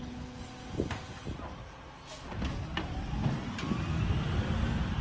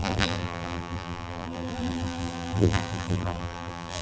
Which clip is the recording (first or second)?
first